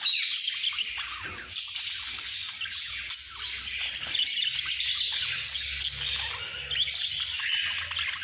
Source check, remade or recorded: recorded